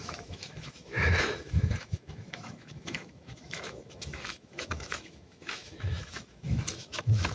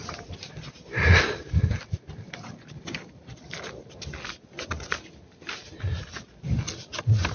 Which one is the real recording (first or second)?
second